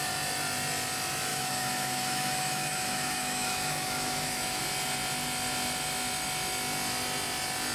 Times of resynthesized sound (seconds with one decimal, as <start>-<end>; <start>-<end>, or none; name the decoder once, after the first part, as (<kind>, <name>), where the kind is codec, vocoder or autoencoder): 1.3-4.6 (autoencoder, DAC-VAE)